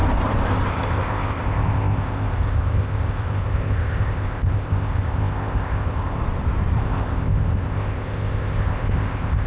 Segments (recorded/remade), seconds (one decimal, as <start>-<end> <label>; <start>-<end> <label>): 0.0-0.7 recorded; 0.7-6.2 remade; 6.2-6.8 recorded; 6.8-9.5 remade